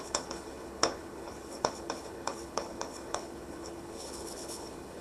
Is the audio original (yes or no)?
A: no